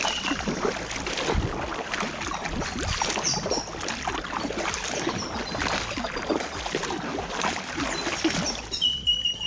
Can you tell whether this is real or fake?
real